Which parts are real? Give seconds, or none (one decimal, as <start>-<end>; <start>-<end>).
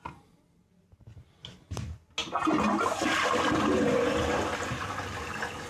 0.0-5.7